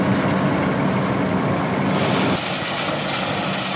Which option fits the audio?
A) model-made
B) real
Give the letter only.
B